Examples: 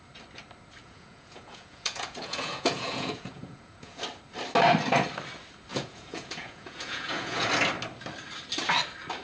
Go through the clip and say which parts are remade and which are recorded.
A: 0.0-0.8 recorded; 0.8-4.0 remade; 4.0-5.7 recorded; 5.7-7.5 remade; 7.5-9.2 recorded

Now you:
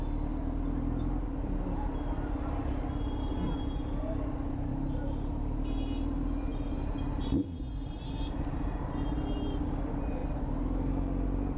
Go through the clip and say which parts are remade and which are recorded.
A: 0.0-11.6 recorded

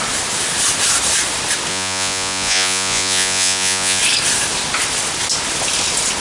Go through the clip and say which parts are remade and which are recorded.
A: 0.0-1.7 recorded; 1.7-4.0 remade; 4.0-6.2 recorded

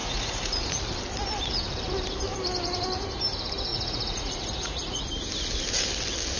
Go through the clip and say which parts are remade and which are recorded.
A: 0.0-0.8 remade; 0.8-3.7 recorded; 3.7-5.0 remade; 5.0-6.4 recorded

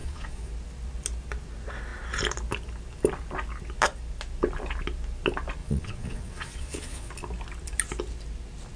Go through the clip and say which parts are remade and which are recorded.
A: 0.0-0.5 remade; 0.5-5.6 recorded; 5.6-7.1 remade; 7.1-8.8 recorded

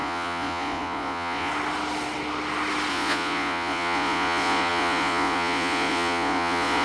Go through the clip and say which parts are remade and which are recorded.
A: 0.0-1.5 remade; 1.5-2.9 recorded; 2.9-6.8 remade

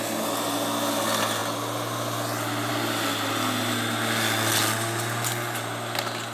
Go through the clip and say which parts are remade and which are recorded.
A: 0.0-6.3 recorded